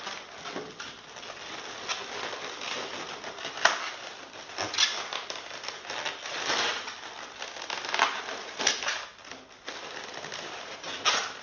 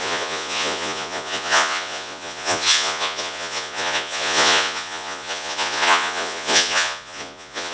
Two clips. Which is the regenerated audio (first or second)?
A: second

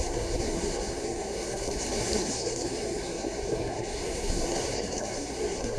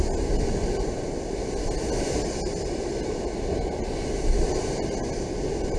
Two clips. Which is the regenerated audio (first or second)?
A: first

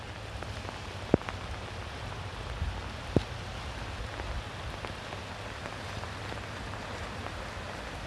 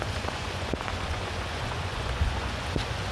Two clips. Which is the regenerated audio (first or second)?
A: second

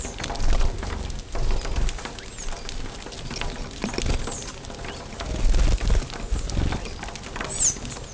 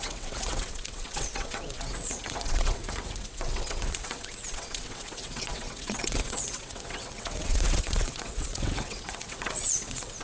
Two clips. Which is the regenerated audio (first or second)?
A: second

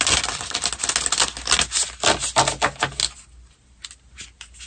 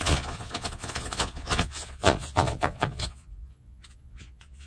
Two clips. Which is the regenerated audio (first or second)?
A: second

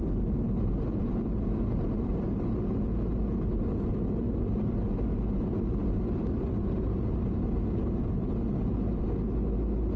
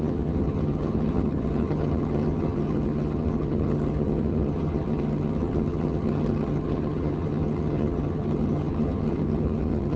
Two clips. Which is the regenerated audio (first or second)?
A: second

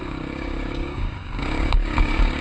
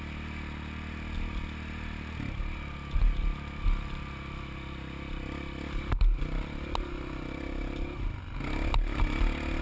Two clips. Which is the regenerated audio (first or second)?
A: first